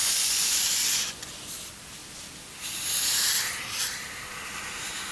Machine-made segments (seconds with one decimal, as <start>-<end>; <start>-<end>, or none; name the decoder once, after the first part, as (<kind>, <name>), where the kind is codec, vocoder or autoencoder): 0.0-1.3 (vocoder, Vocos)